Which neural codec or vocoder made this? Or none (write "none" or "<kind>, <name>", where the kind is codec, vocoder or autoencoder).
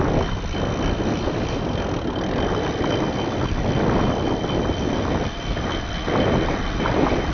none